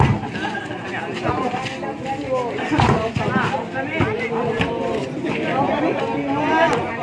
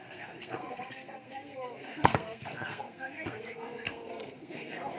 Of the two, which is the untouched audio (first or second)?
first